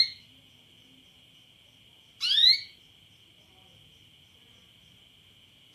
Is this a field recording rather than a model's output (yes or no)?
yes